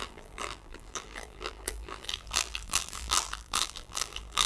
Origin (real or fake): fake